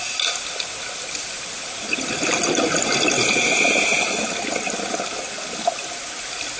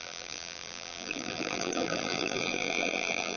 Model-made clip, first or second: second